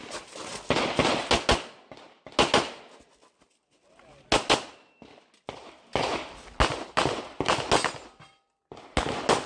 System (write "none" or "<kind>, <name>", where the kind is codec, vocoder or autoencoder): none